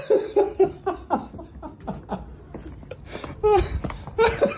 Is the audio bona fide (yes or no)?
yes